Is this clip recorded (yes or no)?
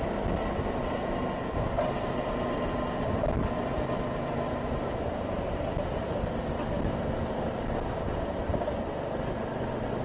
yes